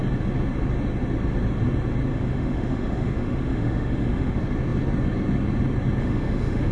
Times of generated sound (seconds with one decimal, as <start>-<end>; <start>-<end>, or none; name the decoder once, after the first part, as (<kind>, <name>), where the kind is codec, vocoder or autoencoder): 2.1-4.3 (autoencoder, DAC-VAE); 6.0-6.7